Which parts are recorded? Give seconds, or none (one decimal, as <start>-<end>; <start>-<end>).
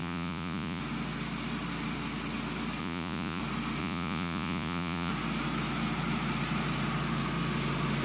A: 0.8-2.8; 3.4-3.8; 5.1-8.0